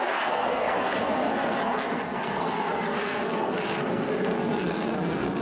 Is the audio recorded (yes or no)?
no